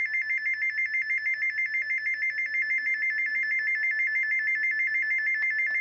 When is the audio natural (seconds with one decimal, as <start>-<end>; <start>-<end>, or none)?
0.0-5.8